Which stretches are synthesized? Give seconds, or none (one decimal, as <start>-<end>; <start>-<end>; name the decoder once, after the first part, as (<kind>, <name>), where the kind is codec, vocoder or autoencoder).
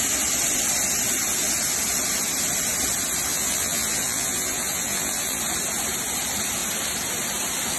3.3-5.4 (vocoder, BigVGAN v2)